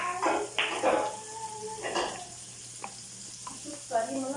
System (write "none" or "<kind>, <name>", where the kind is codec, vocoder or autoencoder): none